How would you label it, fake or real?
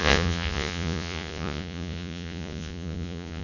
fake